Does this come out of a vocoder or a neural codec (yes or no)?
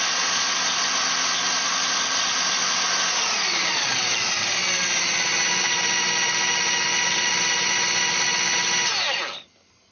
no